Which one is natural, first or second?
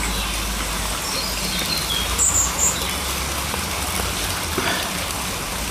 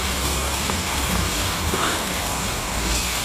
first